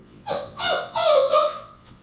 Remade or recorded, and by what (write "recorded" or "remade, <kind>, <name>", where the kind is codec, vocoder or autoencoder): remade, vocoder, WaveNeXt